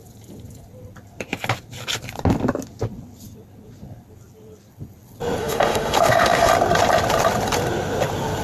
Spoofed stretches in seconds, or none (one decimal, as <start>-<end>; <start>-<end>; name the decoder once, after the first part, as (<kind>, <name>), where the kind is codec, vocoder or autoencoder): 5.4-6.5 (autoencoder, DAC-VAE)